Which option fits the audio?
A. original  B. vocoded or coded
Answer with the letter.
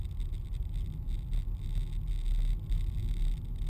A